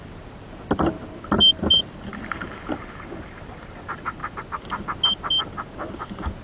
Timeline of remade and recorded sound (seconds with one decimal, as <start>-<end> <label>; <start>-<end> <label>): 0.0-6.4 recorded